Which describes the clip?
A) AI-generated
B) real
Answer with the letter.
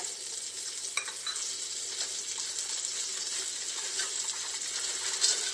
B